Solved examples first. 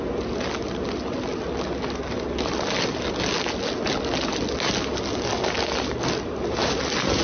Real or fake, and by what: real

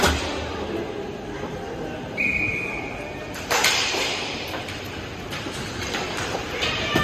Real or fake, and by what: real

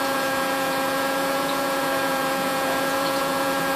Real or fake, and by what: fake, vocoder, Vocos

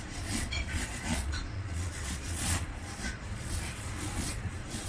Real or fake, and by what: fake, vocoder, Vocos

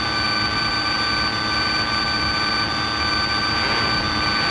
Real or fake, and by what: real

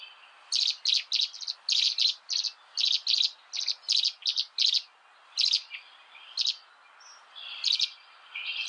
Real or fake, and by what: real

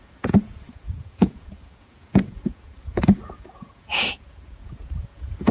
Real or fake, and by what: fake, vocoder, Vocos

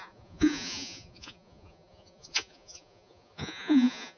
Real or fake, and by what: fake, vocoder, Vocos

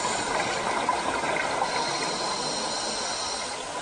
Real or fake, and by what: real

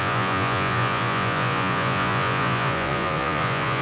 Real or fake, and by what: fake, vocoder, Vocos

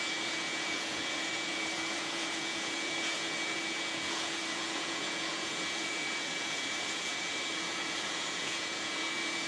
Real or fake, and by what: fake, vocoder, Vocos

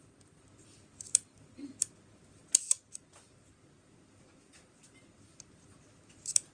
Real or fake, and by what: real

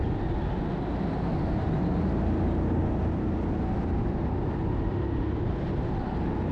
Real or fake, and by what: real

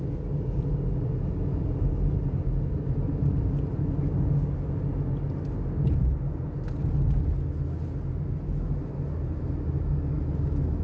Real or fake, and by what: real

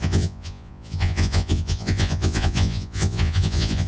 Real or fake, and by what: fake, vocoder, Vocos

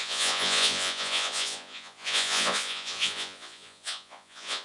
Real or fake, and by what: fake, vocoder, Vocos